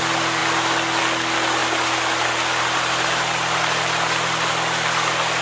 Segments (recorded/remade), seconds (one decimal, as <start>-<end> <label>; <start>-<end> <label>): 0.0-5.4 recorded